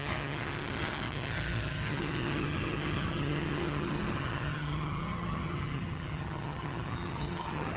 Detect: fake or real fake